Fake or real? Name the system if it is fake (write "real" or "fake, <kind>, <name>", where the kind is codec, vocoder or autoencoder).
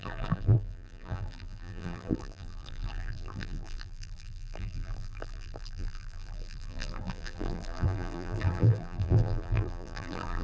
fake, vocoder, BigVGAN v2